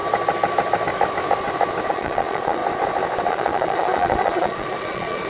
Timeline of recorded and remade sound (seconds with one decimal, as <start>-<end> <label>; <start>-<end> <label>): 0.0-1.9 recorded; 1.9-2.6 remade; 2.6-3.3 recorded; 3.3-5.3 remade